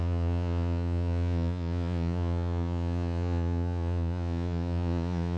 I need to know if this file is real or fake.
fake